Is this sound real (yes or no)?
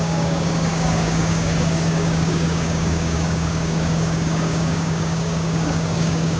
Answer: no